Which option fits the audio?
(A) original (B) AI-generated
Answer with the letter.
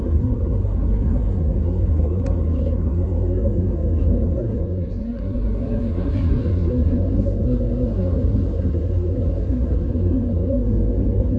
B